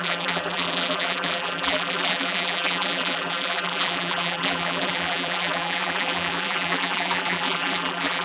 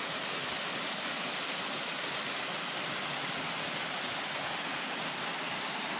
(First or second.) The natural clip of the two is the second